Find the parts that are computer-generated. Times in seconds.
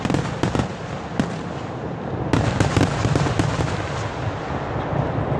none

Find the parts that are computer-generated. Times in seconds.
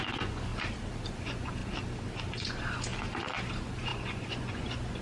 0.0-0.5 (vocoder, Vocos); 1.1-1.6; 2.3-2.9; 3.5-5.0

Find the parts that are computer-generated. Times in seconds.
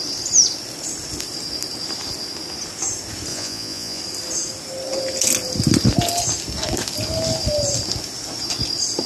3.3-4.0 (vocoder, Vocos)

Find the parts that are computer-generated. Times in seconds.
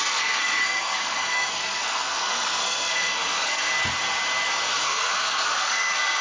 0.0-3.7 (codec, SNAC); 4.8-6.2